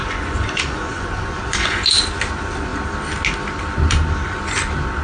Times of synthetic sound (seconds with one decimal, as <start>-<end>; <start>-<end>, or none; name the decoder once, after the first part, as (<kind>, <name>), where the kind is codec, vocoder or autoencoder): 0.0-2.0 (vocoder, Vocos)